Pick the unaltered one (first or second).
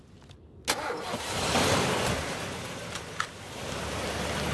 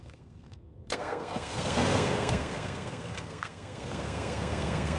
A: first